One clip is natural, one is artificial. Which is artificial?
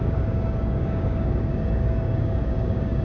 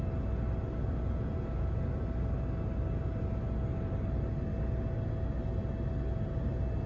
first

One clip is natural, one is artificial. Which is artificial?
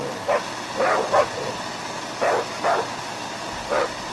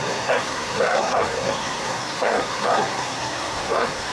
second